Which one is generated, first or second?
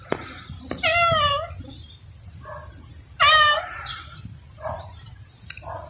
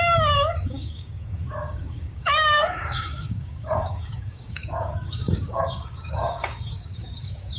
second